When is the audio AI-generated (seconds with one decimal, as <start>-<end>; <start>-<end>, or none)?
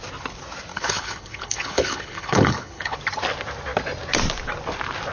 0.7-3.0